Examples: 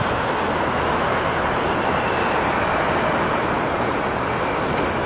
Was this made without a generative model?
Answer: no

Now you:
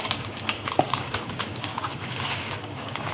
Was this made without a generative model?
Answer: no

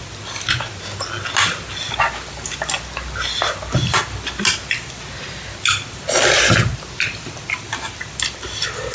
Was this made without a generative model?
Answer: yes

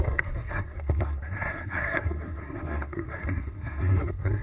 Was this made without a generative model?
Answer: no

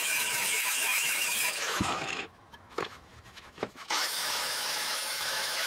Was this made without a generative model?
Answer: no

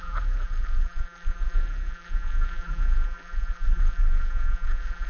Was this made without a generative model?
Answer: no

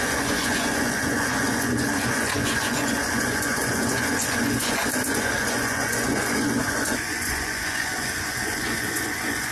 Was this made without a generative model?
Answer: no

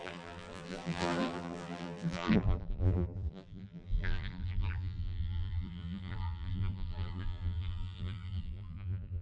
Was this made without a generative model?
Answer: no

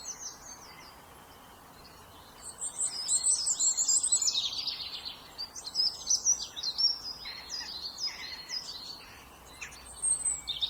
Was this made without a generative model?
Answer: yes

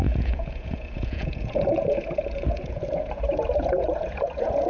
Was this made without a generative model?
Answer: no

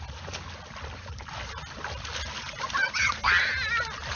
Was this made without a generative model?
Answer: yes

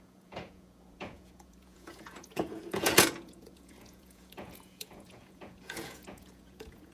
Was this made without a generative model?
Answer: no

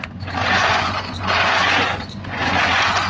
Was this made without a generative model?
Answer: no